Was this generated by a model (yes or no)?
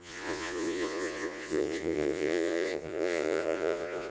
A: yes